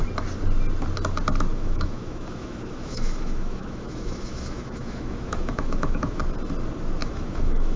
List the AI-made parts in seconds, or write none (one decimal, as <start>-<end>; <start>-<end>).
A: 1.5-6.2; 7.0-7.8